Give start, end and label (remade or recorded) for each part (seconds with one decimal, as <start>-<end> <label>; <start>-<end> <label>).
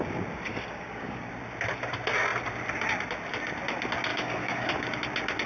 0.0-0.5 recorded; 0.5-1.3 remade; 1.3-4.1 recorded; 4.1-4.7 remade; 4.7-5.5 recorded